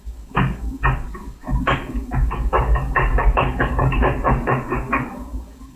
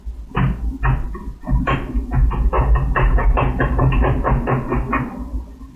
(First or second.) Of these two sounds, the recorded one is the second